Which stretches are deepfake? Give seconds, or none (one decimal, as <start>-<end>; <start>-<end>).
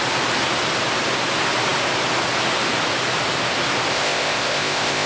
3.9-5.1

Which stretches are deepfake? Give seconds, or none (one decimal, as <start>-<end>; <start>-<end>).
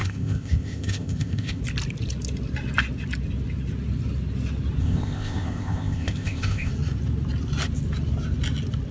0.0-1.6; 4.8-6.7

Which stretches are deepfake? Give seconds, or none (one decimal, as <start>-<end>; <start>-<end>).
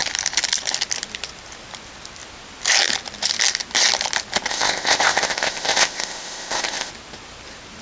4.5-6.9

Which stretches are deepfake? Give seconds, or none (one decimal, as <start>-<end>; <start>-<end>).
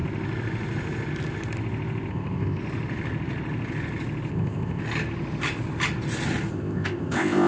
2.1-2.6; 4.3-4.8; 6.5-7.5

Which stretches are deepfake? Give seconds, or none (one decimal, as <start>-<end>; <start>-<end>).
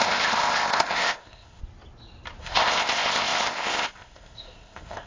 0.0-1.6; 2.4-5.1